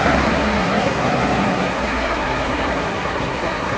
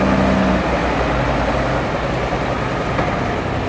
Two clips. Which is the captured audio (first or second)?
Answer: second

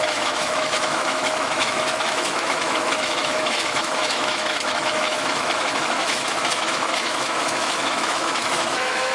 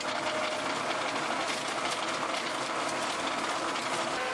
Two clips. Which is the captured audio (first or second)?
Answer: second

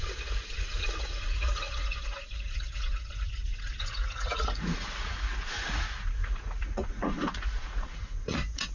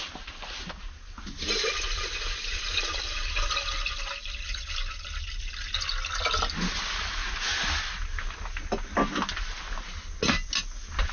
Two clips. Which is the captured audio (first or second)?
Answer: second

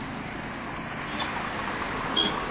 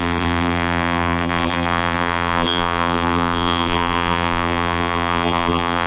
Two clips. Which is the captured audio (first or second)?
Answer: first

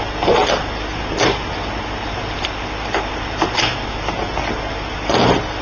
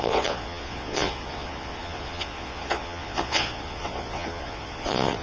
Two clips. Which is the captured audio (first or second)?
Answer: first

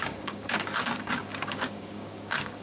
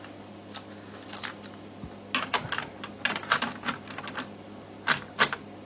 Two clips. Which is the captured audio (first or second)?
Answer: second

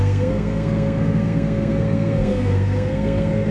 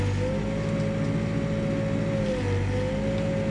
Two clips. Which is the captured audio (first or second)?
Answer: second